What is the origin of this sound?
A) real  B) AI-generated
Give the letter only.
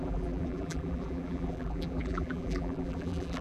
B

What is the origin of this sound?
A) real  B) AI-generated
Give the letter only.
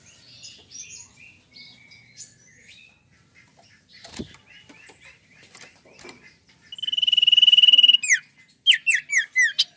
A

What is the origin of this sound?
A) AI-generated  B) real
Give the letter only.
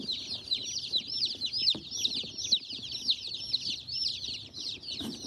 A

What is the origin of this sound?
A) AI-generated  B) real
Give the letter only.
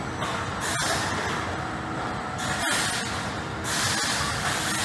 B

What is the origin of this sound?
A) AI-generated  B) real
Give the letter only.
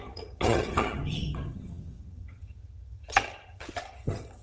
A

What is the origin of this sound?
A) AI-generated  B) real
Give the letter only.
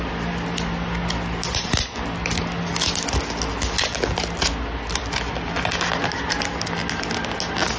B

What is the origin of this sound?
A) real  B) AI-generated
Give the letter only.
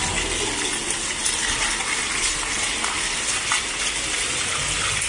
A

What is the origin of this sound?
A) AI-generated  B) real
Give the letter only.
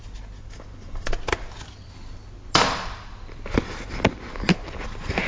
B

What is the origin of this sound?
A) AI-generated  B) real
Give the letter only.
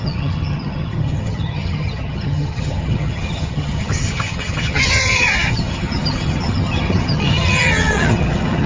A